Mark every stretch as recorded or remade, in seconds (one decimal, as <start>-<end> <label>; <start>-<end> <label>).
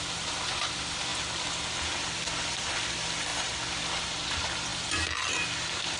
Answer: 0.0-6.0 recorded